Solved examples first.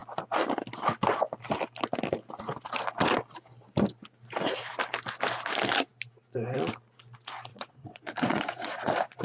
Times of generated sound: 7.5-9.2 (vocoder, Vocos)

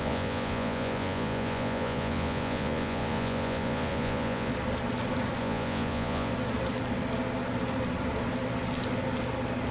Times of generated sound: 0.0-4.5 (vocoder, Vocos); 5.4-6.3

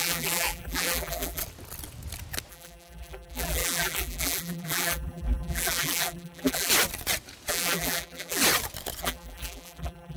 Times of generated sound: 0.0-1.4 (vocoder, BigVGAN v2); 2.5-6.7; 7.5-8.4; 9.0-10.2

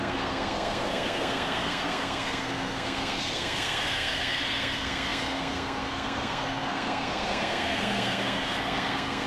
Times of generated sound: 0.0-9.3 (codec, SNAC)

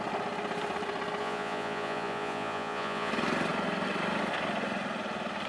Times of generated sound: 1.2-3.1 (vocoder, Vocos)

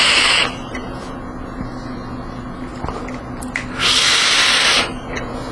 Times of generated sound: none